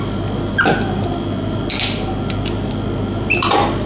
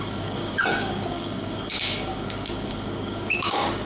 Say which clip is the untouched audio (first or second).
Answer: first